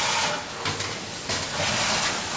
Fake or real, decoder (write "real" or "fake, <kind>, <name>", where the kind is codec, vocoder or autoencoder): real